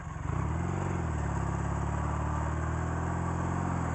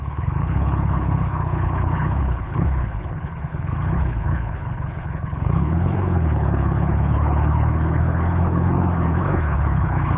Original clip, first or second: first